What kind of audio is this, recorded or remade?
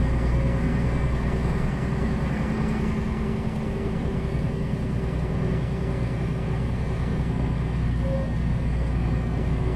remade